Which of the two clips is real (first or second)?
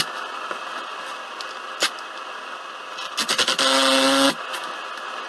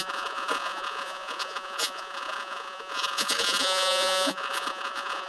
first